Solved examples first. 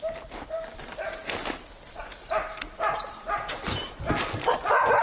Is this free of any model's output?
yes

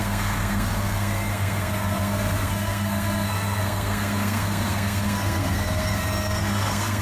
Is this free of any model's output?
no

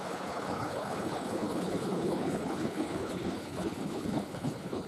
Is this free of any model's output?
no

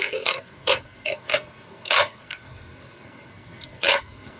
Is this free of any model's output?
no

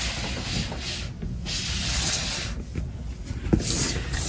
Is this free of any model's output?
yes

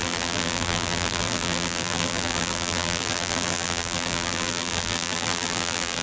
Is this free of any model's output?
no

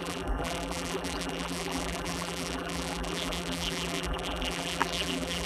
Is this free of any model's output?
no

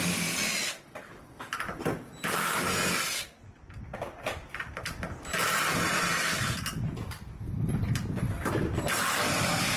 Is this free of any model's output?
yes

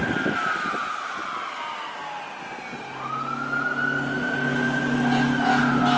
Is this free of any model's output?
yes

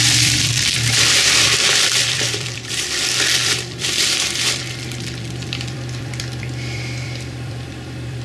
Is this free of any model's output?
no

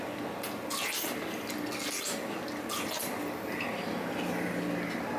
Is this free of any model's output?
yes